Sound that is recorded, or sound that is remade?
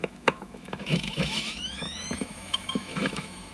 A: remade